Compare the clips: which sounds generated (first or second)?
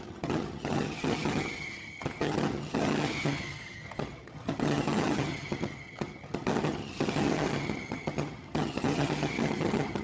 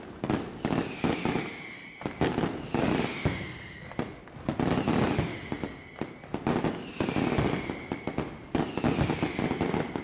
first